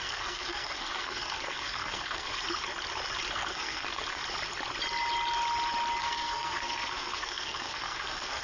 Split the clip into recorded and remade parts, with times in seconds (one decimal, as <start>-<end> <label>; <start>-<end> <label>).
0.0-2.3 remade; 2.3-3.3 recorded; 3.3-4.2 remade; 4.2-6.0 recorded; 6.0-8.4 remade